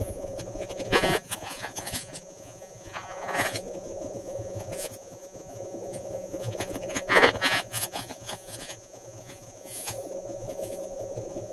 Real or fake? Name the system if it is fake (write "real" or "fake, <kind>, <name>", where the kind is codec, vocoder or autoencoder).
fake, vocoder, Vocos